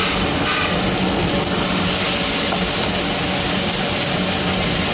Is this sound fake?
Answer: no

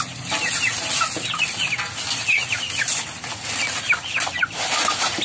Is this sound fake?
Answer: no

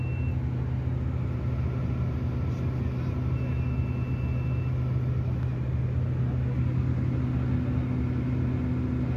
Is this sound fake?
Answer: no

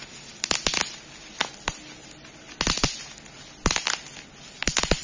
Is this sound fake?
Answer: no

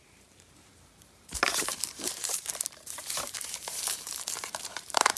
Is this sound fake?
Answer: yes